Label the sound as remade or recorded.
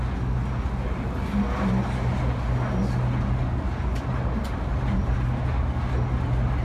recorded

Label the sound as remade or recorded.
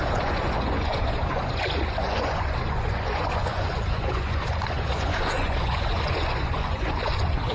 remade